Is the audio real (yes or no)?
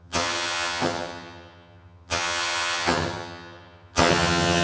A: no